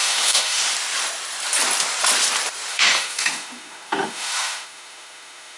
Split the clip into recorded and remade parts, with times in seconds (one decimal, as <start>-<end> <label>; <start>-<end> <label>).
0.0-0.6 remade; 0.6-2.7 recorded; 2.7-5.6 remade